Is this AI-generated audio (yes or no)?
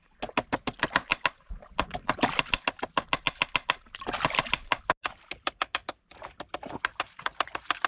no